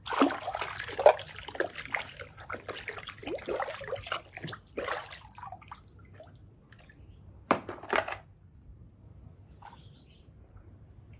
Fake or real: real